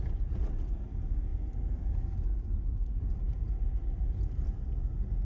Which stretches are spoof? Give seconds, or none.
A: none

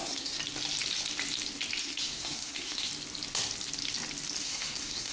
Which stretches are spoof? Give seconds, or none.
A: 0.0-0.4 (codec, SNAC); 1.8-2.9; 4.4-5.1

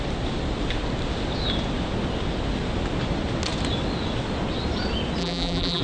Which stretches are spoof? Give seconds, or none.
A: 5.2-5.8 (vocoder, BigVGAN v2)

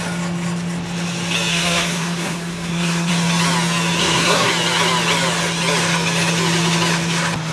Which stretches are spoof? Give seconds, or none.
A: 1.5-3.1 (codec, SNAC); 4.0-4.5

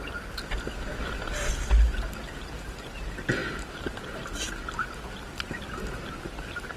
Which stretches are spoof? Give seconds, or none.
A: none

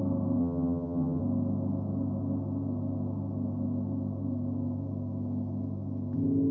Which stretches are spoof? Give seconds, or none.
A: 0.4-1.2 (vocoder, HiFi-GAN)

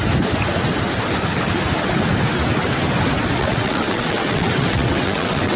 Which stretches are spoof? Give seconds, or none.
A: 3.4-5.6 (vocoder, WaveNeXt)

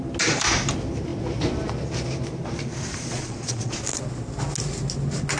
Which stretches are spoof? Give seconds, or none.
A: 2.9-3.7 (vocoder, Vocos)